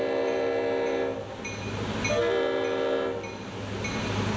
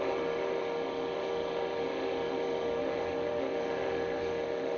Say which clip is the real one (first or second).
first